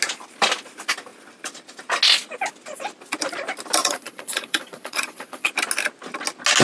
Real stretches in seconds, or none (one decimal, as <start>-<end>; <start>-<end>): 0.0-3.8; 5.5-6.6